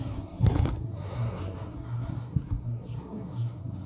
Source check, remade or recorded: remade